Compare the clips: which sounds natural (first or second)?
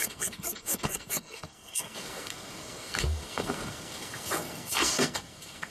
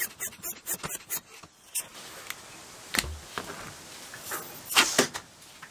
second